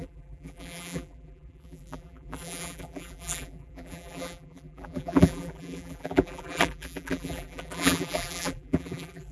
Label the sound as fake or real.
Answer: fake